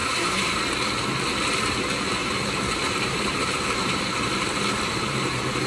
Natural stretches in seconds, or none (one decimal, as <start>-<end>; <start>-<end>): 0.6-2.2